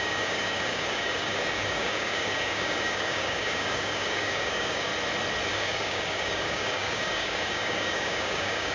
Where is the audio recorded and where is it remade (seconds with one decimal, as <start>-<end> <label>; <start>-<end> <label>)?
0.0-4.9 remade; 4.9-5.5 recorded; 5.5-8.7 remade